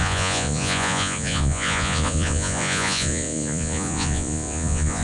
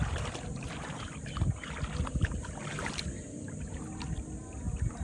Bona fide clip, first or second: second